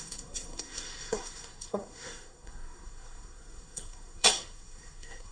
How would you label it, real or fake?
fake